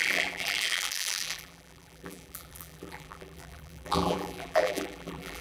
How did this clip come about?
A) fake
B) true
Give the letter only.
A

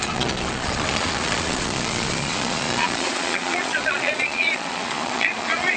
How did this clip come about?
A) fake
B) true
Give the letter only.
A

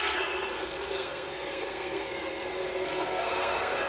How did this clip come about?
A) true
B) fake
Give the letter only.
B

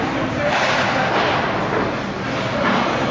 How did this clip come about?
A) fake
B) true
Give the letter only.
B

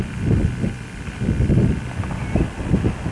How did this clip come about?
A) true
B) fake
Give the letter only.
A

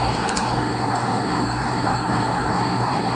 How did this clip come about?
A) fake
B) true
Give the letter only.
A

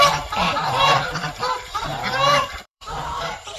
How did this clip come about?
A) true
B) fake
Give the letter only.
B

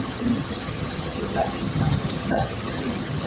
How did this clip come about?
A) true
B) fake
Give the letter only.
B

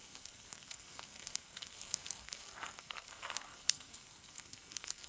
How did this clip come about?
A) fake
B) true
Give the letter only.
A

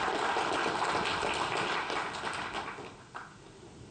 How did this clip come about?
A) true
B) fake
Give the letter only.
A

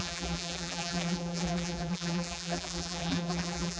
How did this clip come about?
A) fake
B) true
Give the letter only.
A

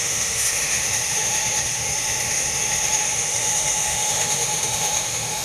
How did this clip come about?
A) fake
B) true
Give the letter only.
A